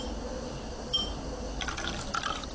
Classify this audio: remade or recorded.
recorded